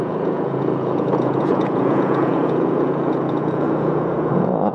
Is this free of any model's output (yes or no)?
no